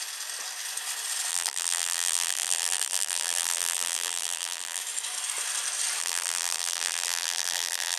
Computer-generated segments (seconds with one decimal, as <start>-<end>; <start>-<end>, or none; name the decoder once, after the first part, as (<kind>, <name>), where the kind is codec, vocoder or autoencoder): 1.3-4.8 (vocoder, BigVGAN v2); 6.0-8.0